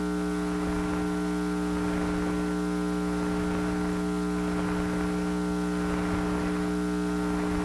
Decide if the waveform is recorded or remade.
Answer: recorded